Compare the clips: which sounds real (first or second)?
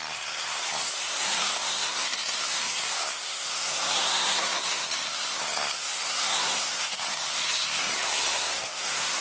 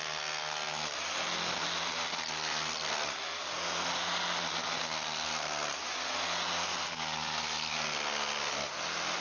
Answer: second